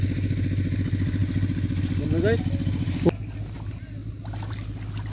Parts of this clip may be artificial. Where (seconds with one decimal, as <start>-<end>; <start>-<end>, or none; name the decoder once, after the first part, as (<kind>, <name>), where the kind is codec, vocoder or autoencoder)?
none